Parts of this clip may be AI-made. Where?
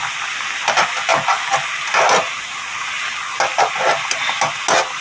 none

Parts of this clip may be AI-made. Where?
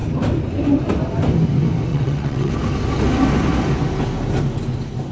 1.9-2.5 (vocoder, WaveNeXt)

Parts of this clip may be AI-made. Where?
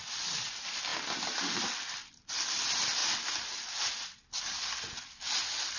none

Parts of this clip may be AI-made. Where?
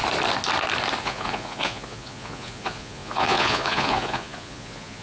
1.0-5.0 (vocoder, Vocos)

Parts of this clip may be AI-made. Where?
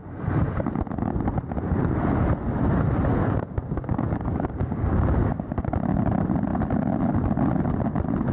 3.2-5.2 (codec, DAC)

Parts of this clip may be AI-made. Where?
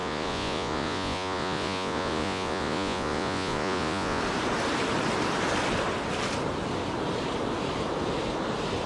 0.0-4.2 (vocoder, Vocos)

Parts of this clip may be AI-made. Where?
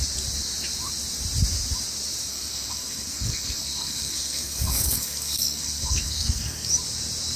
2.3-6.7 (codec, SNAC)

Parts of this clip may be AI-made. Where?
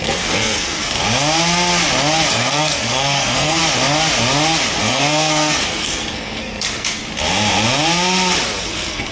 0.0-1.0 (codec, SNAC); 2.3-3.6; 4.8-7.0; 8.6-9.1